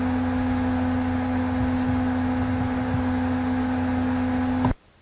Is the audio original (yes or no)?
yes